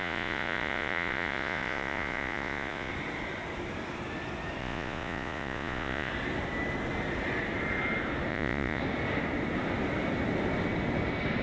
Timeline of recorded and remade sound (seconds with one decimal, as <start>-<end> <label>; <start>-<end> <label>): 0.0-2.9 remade; 2.9-4.6 recorded; 4.6-6.1 remade; 6.1-8.3 recorded; 8.3-8.8 remade; 8.8-11.4 recorded